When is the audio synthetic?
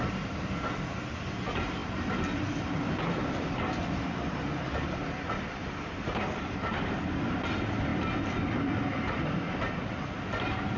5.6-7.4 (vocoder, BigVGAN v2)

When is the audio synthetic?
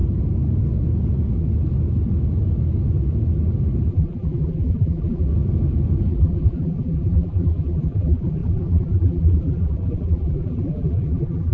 3.9-5.3 (vocoder, BigVGAN v2); 6.1-11.5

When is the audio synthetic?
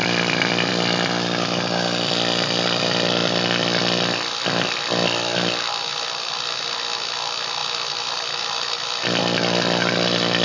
0.0-0.7 (vocoder, BigVGAN v2); 7.6-9.2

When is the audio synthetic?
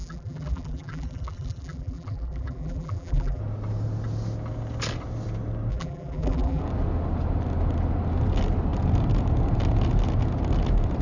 0.0-3.4 (vocoder, BigVGAN v2); 5.7-6.6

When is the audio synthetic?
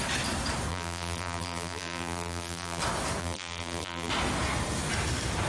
0.7-2.8 (vocoder, BigVGAN v2); 3.2-4.1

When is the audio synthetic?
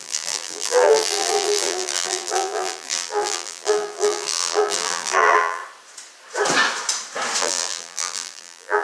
0.0-5.6 (vocoder, BigVGAN v2); 7.4-8.8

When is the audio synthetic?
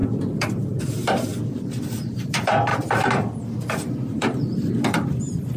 0.0-1.3 (vocoder, BigVGAN v2); 2.0-5.6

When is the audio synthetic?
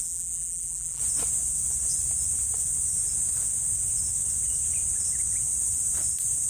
0.0-1.0 (vocoder, BigVGAN v2)